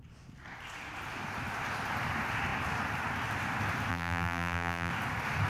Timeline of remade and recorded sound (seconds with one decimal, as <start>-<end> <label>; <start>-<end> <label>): 0.0-3.9 recorded; 3.9-4.9 remade; 4.9-5.5 recorded